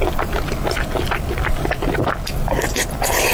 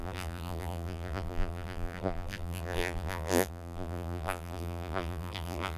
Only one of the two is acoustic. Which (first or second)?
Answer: first